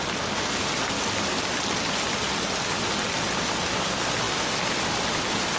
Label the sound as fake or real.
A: real